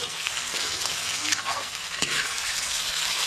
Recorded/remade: remade